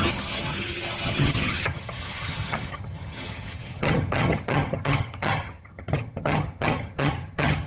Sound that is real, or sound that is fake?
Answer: fake